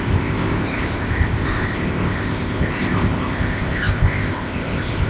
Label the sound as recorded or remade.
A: remade